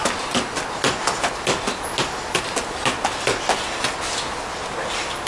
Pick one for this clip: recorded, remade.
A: recorded